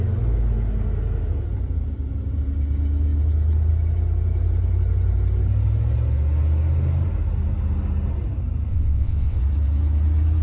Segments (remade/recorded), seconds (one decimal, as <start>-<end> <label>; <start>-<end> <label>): 0.0-8.7 recorded; 8.7-9.4 remade; 9.4-10.4 recorded